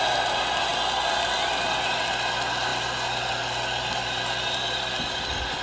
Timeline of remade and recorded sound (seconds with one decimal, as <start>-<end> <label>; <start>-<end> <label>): 0.0-5.6 recorded